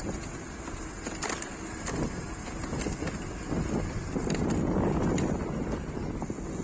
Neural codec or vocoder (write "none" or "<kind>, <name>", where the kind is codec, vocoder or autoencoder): none